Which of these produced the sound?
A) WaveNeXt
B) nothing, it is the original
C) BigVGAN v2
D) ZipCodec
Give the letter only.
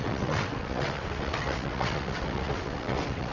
A